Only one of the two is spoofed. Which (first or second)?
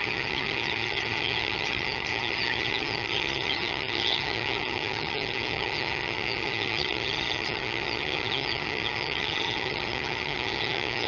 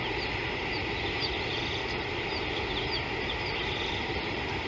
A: first